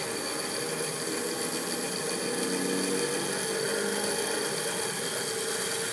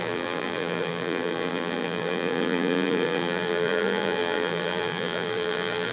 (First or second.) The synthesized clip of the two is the second